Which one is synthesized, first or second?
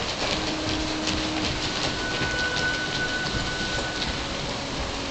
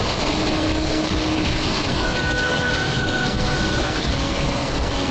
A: second